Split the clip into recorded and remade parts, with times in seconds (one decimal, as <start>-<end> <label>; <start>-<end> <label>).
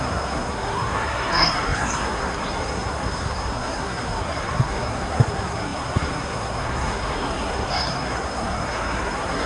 0.0-9.5 remade